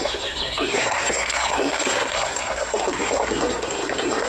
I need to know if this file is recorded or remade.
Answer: remade